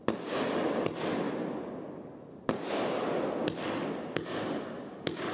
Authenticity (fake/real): real